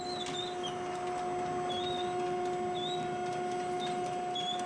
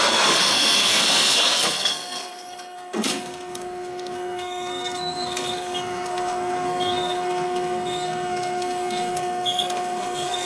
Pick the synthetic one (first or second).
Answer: second